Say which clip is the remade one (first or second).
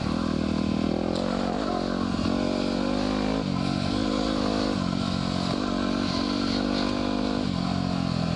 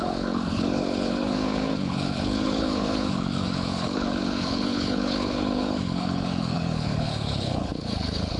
second